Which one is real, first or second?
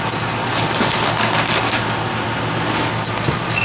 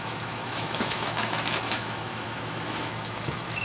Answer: first